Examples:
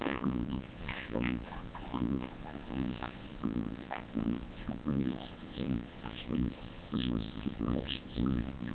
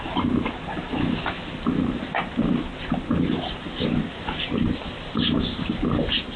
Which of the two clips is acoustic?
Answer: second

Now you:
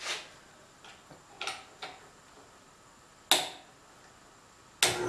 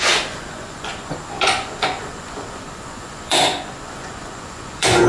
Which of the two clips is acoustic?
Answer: first